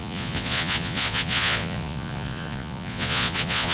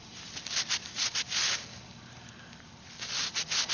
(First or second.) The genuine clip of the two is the second